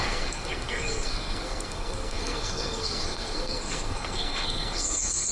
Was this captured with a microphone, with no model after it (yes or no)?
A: no